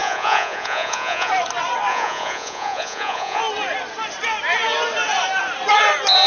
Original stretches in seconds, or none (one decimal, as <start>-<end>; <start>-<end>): 1.3-1.9; 3.4-6.3